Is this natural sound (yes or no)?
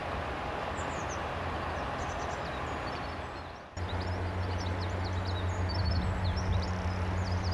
yes